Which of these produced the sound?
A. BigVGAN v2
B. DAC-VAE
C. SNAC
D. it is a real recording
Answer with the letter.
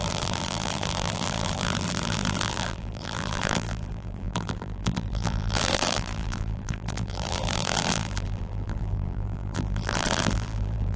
A